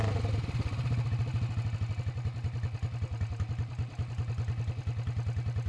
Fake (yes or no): no